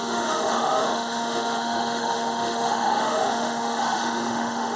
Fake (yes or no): yes